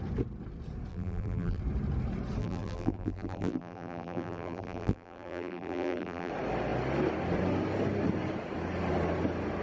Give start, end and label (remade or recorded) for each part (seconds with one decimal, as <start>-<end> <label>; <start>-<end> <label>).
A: 0.0-0.9 recorded; 0.9-1.6 remade; 1.6-2.4 recorded; 2.4-6.3 remade; 6.3-9.6 recorded